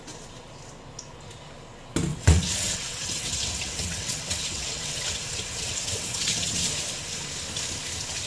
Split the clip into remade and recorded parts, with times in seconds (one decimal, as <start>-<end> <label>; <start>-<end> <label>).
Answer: 0.0-2.1 recorded; 2.1-6.5 remade; 6.5-8.3 recorded